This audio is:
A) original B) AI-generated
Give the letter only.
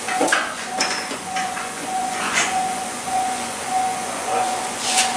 B